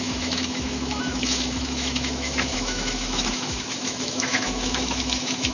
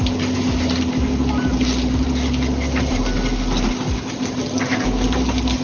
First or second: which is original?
second